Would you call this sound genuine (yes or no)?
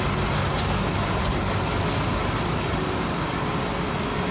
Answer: yes